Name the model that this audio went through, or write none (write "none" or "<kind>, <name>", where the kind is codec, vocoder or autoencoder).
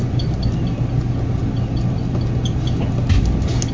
none